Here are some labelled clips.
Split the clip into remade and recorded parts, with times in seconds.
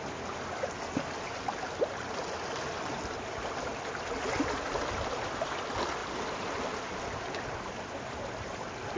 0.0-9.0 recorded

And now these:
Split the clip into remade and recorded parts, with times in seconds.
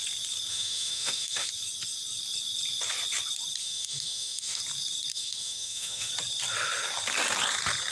0.0-0.5 recorded; 0.5-1.5 remade; 1.5-3.6 recorded; 3.6-4.6 remade; 4.6-5.1 recorded; 5.1-6.1 remade; 6.1-7.9 recorded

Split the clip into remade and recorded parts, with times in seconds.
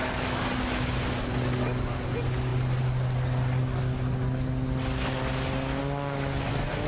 0.0-6.9 recorded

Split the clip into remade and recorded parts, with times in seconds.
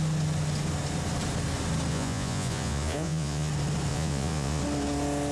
0.0-1.9 recorded; 1.9-3.5 remade; 3.5-3.9 recorded; 3.9-4.6 remade; 4.6-5.3 recorded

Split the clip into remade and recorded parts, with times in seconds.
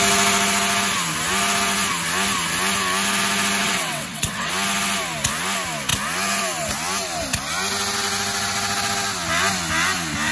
0.0-3.6 recorded; 3.6-4.5 remade; 4.5-10.3 recorded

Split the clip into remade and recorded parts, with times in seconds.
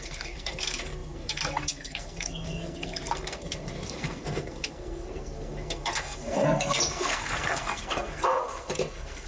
0.0-9.3 remade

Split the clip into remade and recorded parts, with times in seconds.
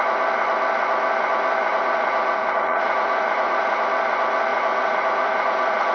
0.0-1.6 recorded; 1.6-3.9 remade; 3.9-4.5 recorded; 4.5-5.9 remade